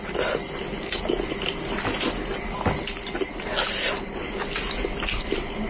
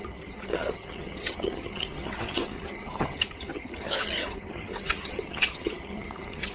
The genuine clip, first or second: first